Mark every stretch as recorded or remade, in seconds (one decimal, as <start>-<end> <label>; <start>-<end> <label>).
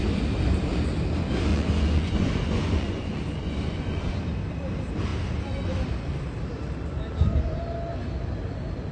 0.0-1.5 recorded; 1.5-4.1 remade; 4.1-8.9 recorded